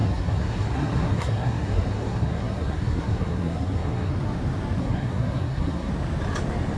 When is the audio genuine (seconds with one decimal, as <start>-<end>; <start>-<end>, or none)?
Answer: 4.1-4.8; 5.9-6.8